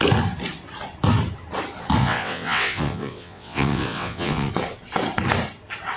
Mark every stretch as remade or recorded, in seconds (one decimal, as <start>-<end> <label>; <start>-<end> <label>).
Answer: 0.0-2.0 recorded; 2.0-4.5 remade; 4.5-6.0 recorded